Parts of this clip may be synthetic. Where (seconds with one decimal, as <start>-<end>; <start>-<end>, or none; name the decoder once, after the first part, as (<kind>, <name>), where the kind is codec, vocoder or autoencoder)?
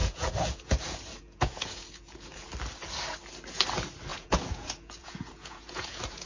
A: 0.0-2.5 (vocoder, Vocos); 4.1-6.3